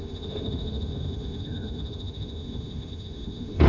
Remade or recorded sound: remade